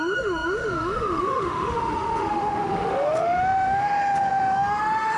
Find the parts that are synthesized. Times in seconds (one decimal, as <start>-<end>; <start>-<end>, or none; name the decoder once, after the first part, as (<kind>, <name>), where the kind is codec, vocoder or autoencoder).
0.0-5.2 (autoencoder, DAC-VAE)